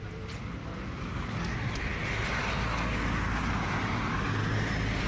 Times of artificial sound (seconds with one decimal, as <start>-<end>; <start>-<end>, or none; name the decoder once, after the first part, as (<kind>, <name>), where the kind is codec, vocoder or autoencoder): none